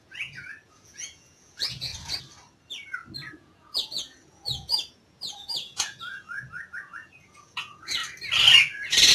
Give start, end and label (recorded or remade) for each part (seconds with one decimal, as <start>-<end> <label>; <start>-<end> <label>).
0.0-1.9 remade; 1.9-3.3 recorded; 3.3-8.0 remade; 8.0-9.1 recorded